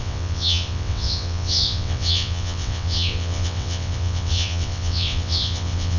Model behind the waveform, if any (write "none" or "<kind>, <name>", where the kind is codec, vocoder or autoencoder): vocoder, WaveNeXt